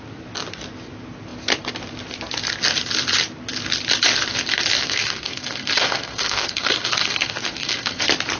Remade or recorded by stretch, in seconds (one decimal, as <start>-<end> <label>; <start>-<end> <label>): 0.0-4.8 recorded; 4.8-8.0 remade; 8.0-8.4 recorded